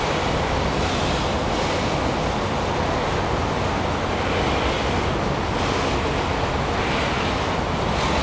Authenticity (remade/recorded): recorded